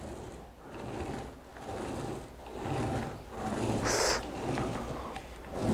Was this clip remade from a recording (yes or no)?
no